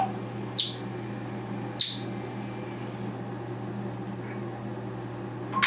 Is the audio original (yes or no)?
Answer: yes